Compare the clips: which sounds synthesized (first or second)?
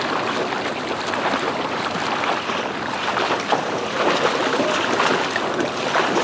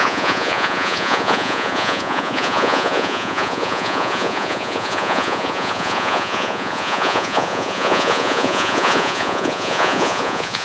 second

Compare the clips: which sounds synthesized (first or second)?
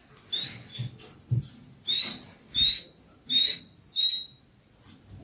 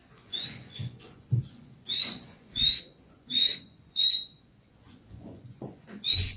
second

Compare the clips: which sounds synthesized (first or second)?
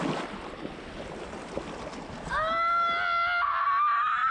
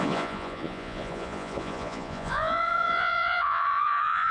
second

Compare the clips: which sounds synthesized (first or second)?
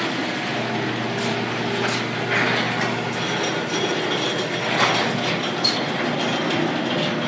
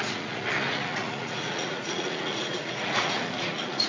second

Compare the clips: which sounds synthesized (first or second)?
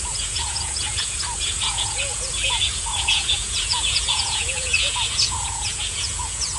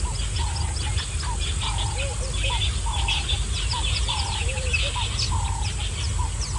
first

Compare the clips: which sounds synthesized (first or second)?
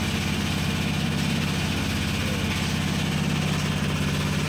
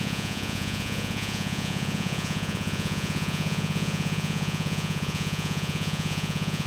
second